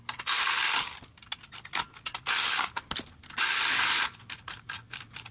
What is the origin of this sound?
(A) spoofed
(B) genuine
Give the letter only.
B